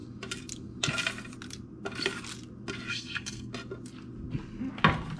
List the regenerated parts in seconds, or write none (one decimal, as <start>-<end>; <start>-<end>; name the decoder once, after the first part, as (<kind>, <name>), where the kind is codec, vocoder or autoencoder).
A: 2.9-3.5 (codec, SNAC)